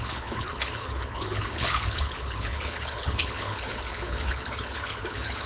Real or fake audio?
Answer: fake